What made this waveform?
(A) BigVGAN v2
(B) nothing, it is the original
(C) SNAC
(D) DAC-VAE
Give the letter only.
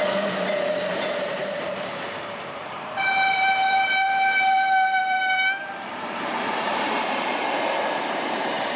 A